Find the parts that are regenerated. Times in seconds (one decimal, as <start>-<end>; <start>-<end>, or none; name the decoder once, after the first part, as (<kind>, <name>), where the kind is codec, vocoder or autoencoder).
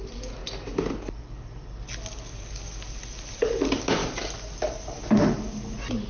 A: none